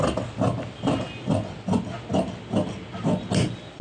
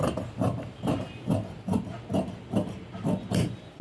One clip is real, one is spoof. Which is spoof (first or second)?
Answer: second